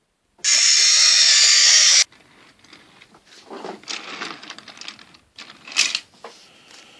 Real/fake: real